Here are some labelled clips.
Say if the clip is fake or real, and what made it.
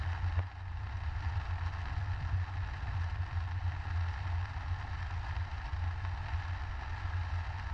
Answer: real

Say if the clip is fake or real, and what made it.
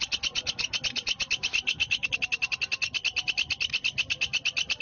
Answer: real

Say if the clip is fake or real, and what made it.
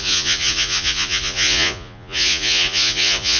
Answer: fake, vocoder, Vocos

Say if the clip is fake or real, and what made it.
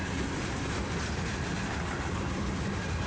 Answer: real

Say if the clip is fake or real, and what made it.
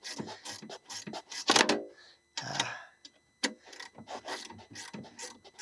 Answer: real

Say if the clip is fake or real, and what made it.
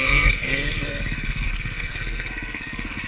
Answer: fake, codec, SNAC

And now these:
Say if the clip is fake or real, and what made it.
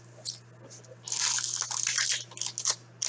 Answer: real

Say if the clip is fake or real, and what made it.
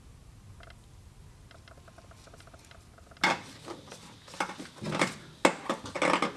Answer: real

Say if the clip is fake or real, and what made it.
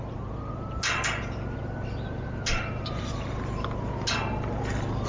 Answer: real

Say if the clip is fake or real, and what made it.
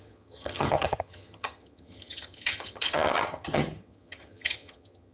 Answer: fake, vocoder, HiFi-GAN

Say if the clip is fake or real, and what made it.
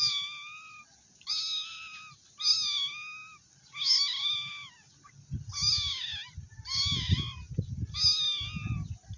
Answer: real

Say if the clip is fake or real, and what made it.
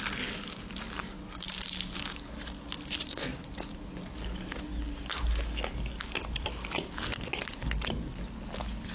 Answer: real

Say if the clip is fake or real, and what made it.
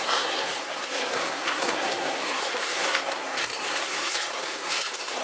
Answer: fake, codec, SNAC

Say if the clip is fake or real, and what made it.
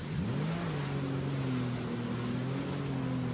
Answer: real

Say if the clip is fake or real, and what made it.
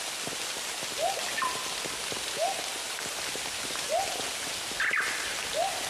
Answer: real